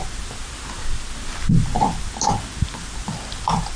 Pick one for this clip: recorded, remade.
recorded